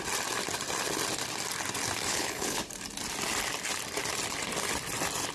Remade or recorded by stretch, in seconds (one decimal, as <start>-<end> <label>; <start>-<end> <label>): 0.0-2.1 recorded; 2.1-2.6 remade; 2.6-5.3 recorded

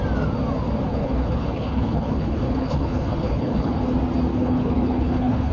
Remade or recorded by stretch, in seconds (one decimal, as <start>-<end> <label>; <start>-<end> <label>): 0.0-0.9 recorded; 0.9-3.8 remade; 3.8-4.3 recorded; 4.3-5.5 remade

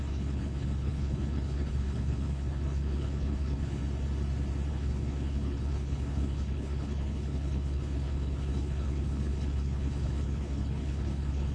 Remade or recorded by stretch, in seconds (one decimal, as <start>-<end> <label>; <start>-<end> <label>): 0.0-3.8 remade; 3.8-4.7 recorded; 4.7-11.5 remade

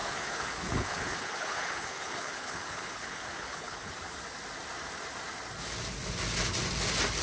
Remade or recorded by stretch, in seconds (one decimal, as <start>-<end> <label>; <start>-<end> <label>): 0.0-3.9 remade; 3.9-7.2 recorded

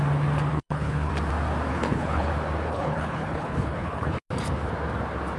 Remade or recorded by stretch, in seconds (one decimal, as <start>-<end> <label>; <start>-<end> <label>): 0.0-0.5 recorded; 0.5-1.1 remade; 1.1-1.7 recorded; 1.7-2.3 remade; 2.3-2.7 recorded; 2.7-4.2 remade; 4.2-5.4 recorded

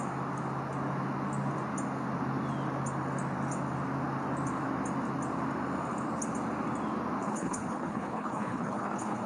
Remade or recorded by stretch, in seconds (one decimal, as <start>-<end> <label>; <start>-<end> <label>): 0.0-7.2 recorded; 7.2-9.3 remade

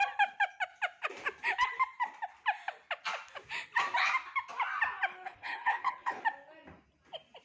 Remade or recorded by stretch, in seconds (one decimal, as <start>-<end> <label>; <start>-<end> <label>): 0.0-5.1 recorded; 5.1-6.2 remade; 6.2-7.4 recorded